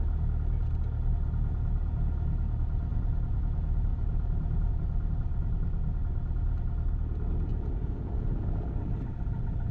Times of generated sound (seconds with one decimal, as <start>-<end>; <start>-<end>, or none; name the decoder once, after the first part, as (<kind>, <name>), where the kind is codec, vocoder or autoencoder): 2.9-3.4 (vocoder, Vocos); 7.5-8.3